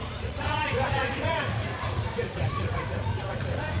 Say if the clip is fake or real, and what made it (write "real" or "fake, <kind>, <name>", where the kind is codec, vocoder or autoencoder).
fake, vocoder, Vocos